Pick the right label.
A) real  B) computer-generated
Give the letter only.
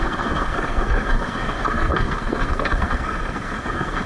B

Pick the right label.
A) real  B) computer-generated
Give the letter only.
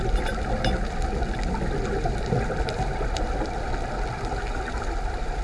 A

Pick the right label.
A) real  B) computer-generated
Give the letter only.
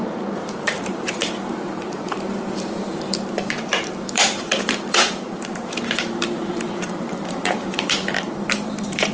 B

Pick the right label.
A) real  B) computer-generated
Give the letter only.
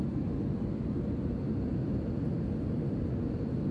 A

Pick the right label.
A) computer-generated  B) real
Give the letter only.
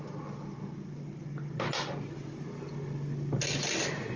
B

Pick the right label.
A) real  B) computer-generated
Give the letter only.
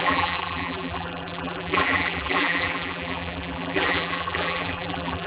B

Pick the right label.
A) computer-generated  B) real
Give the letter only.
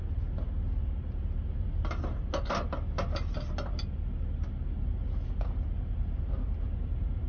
B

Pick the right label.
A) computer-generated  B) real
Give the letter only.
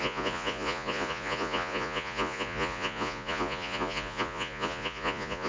A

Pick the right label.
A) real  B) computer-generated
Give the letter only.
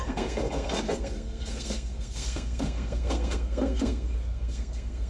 B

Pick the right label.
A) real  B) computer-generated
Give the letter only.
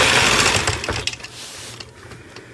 A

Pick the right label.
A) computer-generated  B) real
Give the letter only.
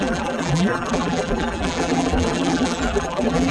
A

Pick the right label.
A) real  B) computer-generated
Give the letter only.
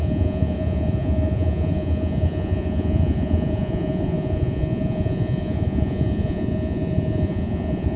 B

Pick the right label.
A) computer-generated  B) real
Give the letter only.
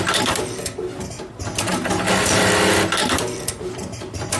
B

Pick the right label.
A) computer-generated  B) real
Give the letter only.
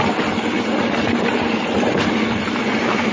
B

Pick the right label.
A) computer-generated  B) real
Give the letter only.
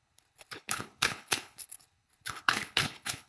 A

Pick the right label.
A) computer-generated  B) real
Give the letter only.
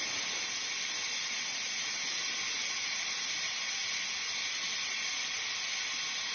B